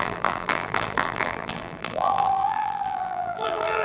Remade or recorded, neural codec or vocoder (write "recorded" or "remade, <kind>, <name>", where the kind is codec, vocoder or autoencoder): remade, vocoder, BigVGAN v2